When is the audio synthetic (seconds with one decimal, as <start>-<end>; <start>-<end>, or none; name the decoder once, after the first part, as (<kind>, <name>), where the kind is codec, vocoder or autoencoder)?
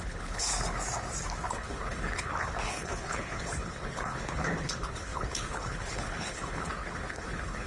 0.0-0.5 (codec, HILCodec); 1.5-7.7